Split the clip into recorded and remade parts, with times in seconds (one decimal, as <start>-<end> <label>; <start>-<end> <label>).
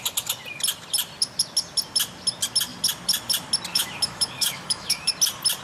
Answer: 0.0-3.7 recorded; 3.7-5.1 remade; 5.1-5.6 recorded